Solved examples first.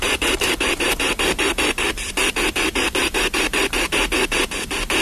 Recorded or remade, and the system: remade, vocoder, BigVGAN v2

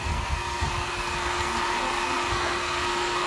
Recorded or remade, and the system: remade, codec, SNAC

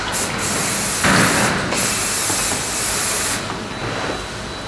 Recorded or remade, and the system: recorded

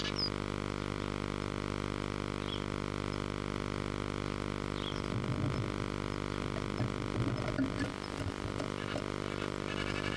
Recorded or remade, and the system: remade, vocoder, BigVGAN v2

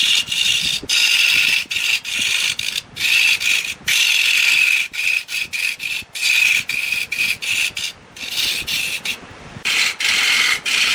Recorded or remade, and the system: recorded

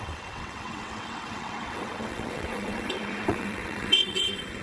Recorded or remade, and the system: remade, vocoder, WaveNeXt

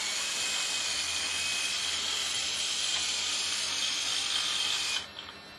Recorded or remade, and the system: recorded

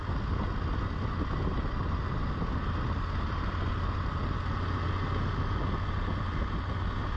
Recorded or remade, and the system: recorded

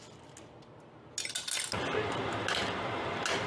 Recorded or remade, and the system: recorded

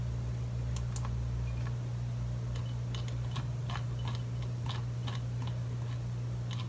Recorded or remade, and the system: recorded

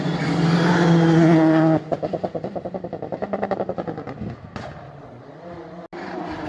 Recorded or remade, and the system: recorded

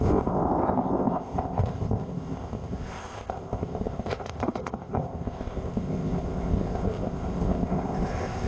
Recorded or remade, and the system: remade, codec, ZipCodec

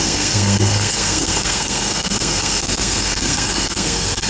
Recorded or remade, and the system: remade, codec, SNAC